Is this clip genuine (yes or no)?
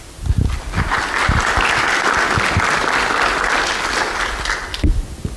yes